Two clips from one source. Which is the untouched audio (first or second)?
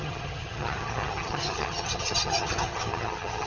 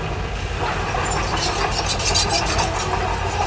second